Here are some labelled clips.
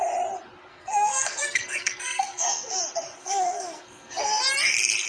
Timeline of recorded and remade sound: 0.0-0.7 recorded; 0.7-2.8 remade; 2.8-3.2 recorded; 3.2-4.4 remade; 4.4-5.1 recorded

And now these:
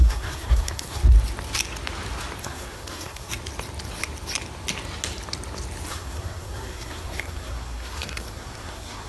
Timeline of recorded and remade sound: 0.0-1.0 remade; 1.0-2.4 recorded; 2.4-3.3 remade; 3.3-5.9 recorded; 5.9-9.1 remade

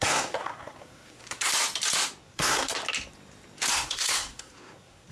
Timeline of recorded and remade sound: 0.0-1.5 remade; 1.5-2.2 recorded; 2.2-2.7 remade; 2.7-3.7 recorded; 3.7-5.1 remade

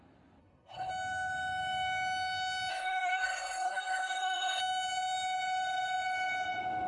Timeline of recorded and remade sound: 0.0-0.4 recorded; 0.4-0.9 remade; 0.9-2.7 recorded; 2.7-4.6 remade; 4.6-6.9 recorded

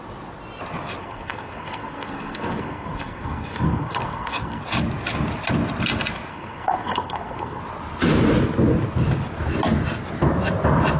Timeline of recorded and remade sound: 0.0-1.0 recorded; 1.0-4.6 remade; 4.6-6.3 recorded; 6.3-7.6 remade; 7.6-11.0 recorded

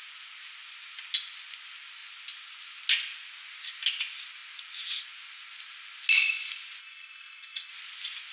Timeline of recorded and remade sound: 0.0-6.8 recorded; 6.8-7.7 remade; 7.7-8.3 recorded

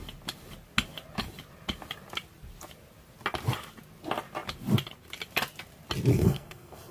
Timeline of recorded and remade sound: 0.0-6.1 recorded; 6.1-6.9 remade

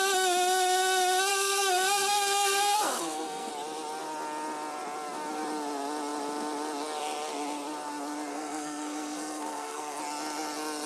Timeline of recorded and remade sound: 0.0-1.3 recorded; 1.3-3.5 remade; 3.5-8.3 recorded; 8.3-10.0 remade; 10.0-10.9 recorded